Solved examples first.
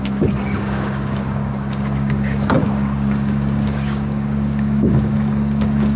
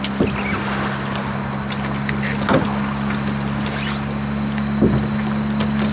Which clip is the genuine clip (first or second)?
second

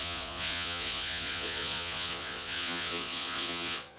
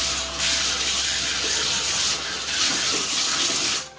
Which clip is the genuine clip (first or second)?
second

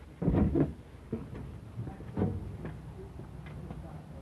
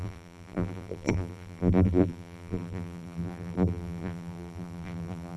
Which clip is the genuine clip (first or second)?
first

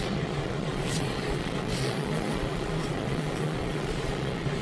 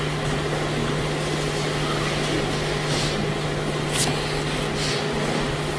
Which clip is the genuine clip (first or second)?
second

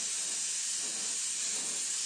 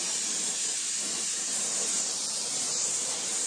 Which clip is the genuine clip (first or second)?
first